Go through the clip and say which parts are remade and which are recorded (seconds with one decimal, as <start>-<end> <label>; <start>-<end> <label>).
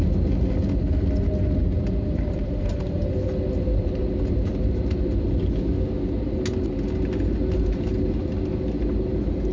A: 0.0-1.6 recorded; 1.6-3.0 remade; 3.0-9.5 recorded